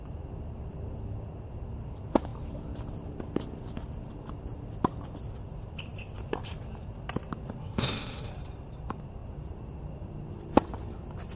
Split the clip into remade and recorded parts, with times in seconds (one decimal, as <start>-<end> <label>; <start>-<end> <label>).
0.0-7.6 recorded; 7.6-8.3 remade; 8.3-11.4 recorded